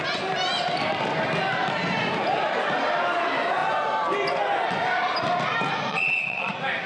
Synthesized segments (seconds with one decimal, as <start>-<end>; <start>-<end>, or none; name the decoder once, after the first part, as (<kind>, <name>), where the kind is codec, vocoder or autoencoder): 5.9-6.5 (vocoder, WaveNeXt)